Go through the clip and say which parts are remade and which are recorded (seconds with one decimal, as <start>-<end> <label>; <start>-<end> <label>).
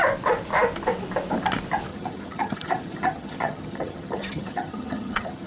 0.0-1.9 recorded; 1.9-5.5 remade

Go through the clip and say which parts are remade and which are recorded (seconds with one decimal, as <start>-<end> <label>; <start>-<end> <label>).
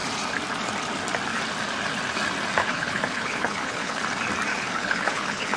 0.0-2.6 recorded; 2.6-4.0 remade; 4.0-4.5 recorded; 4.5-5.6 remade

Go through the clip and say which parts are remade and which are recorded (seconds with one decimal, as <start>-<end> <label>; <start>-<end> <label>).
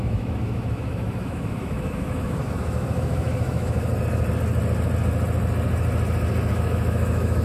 0.0-3.9 remade; 3.9-6.5 recorded; 6.5-7.4 remade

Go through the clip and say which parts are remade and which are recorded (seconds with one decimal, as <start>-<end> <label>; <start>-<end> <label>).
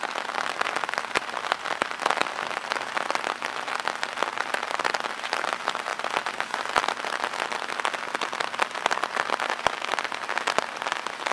0.0-11.3 recorded